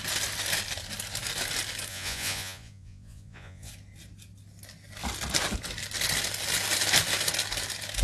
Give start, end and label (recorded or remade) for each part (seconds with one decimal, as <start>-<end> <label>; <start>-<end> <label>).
0.0-1.9 recorded; 1.9-3.7 remade; 3.7-8.0 recorded